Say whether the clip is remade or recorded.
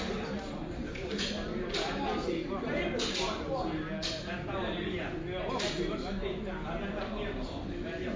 recorded